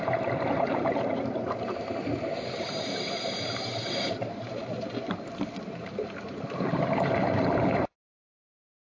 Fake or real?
fake